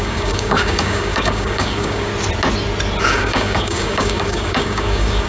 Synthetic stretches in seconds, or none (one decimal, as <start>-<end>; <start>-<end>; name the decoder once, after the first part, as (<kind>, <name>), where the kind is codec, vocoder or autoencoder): 0.0-2.1 (codec, DAC); 3.0-5.3